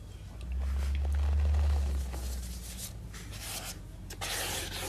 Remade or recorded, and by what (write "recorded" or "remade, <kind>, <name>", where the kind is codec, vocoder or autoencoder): recorded